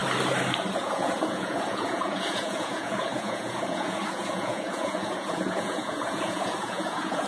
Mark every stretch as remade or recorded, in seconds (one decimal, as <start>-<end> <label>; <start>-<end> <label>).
0.0-0.7 recorded; 0.7-7.3 remade